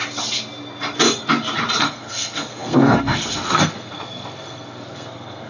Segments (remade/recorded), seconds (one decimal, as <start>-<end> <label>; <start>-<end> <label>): 0.0-1.8 recorded; 1.8-5.5 remade